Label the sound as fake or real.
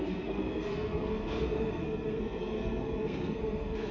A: fake